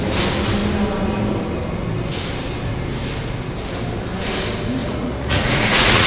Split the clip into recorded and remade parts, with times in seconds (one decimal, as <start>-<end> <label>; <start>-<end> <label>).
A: 0.0-4.8 recorded; 4.8-6.1 remade